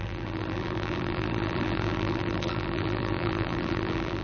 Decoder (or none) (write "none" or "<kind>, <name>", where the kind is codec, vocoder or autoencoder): vocoder, BigVGAN v2